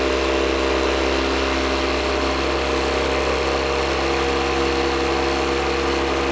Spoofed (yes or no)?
no